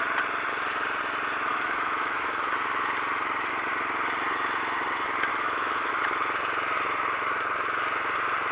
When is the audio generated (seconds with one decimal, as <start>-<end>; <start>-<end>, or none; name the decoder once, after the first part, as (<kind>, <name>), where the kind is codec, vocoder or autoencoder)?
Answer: 1.5-2.5 (autoencoder, DAC-VAE); 5.3-5.9